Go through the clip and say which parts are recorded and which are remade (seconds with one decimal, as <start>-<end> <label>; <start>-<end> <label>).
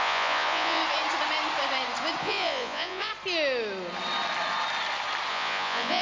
0.0-0.8 remade; 0.8-2.2 recorded; 2.2-3.1 remade; 3.1-5.3 recorded; 5.3-6.0 remade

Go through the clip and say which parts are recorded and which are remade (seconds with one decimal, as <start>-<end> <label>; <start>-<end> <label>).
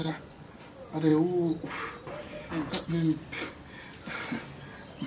0.0-0.6 remade; 0.6-5.1 recorded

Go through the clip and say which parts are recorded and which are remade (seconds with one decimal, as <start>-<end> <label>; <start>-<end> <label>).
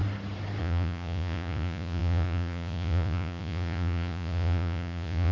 0.0-0.6 recorded; 0.6-5.3 remade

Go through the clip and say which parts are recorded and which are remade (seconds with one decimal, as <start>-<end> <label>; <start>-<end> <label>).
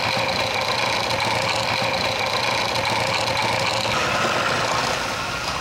0.0-5.6 recorded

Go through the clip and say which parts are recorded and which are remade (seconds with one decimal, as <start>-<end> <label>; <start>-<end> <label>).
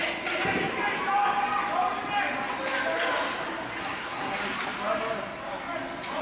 0.0-3.8 recorded; 3.8-4.3 remade; 4.3-6.2 recorded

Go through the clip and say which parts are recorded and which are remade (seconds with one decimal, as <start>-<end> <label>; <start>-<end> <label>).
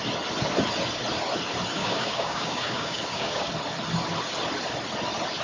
0.0-1.8 recorded; 1.8-3.5 remade; 3.5-5.4 recorded